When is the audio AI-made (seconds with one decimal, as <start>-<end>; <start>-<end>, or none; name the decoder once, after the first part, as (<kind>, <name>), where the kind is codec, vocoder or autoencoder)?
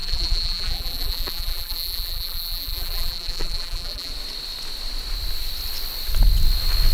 0.0-4.1 (vocoder, BigVGAN v2)